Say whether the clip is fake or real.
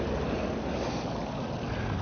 real